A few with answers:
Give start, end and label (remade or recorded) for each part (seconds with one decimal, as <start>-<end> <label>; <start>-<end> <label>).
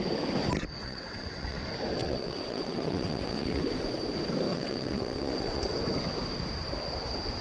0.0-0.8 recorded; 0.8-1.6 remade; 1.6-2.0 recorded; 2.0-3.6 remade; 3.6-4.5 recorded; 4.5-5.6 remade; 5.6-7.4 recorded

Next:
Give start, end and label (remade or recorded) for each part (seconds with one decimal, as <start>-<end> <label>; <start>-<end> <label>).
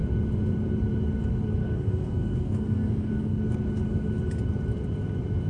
0.0-1.6 recorded; 1.6-3.4 remade; 3.4-5.5 recorded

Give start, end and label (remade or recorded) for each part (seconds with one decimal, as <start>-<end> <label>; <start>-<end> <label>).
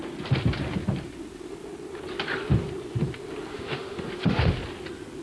0.0-3.5 recorded; 3.5-4.5 remade; 4.5-5.2 recorded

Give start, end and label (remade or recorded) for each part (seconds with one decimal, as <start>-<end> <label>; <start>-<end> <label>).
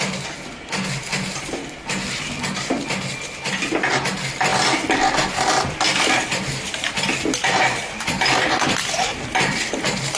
0.0-10.2 recorded